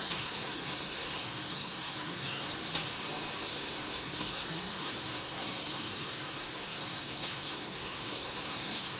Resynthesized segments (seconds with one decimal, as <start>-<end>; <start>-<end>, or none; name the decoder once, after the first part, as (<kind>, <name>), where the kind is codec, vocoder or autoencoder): 0.0-2.5 (codec, SNAC); 3.5-9.0